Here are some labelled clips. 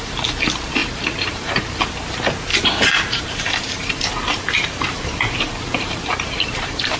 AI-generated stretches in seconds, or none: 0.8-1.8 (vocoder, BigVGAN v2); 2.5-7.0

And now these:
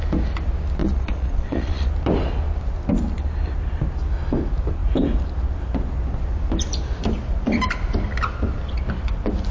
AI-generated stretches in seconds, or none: 0.8-1.9 (vocoder, Vocos)

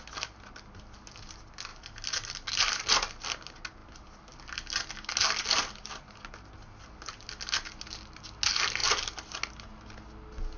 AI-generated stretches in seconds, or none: none

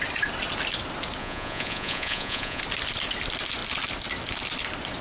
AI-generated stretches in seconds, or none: 1.2-2.6 (vocoder, Vocos)

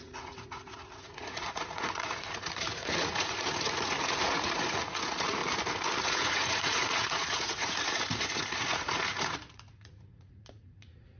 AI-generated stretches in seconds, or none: 0.0-5.4 (vocoder, Vocos); 6.0-11.2